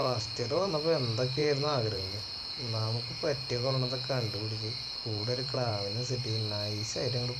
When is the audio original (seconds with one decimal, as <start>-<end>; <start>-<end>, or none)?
0.7-1.4; 5.7-7.4